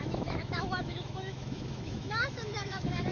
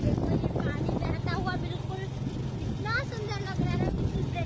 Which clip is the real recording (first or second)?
second